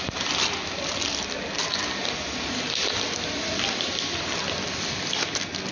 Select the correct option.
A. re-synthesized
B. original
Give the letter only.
B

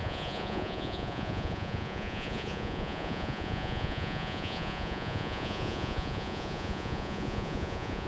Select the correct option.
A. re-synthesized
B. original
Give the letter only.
A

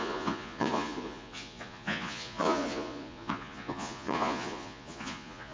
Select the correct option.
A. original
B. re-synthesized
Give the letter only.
B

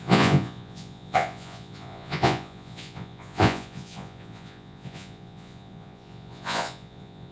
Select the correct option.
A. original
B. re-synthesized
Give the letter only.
B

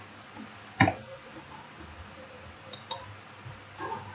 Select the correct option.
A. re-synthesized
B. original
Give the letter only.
B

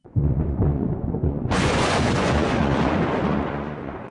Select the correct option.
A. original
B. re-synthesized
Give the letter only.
B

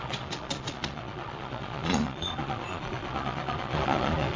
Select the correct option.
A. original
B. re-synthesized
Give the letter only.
B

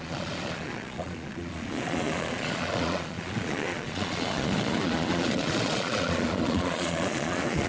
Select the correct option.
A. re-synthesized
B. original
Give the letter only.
A